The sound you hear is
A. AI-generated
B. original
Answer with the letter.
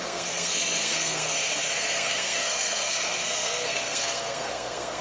A